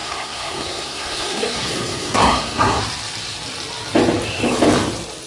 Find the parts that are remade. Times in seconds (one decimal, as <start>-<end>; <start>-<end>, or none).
0.0-2.8